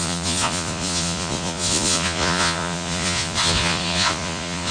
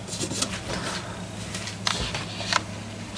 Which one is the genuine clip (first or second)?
second